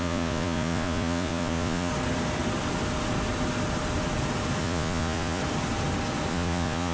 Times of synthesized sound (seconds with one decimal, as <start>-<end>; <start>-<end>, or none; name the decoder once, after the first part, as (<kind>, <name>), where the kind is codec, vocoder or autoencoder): 0.0-1.9 (vocoder, Vocos); 4.6-5.4; 6.3-6.9